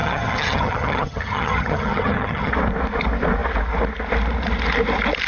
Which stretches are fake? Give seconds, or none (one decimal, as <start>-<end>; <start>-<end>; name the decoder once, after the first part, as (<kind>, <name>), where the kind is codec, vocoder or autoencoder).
0.0-2.5 (vocoder, HiFi-GAN)